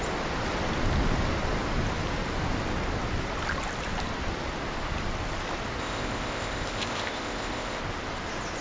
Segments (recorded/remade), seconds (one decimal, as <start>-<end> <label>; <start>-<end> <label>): 0.0-5.8 recorded; 5.8-7.8 remade; 7.8-8.6 recorded